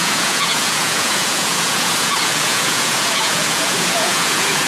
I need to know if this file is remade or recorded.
remade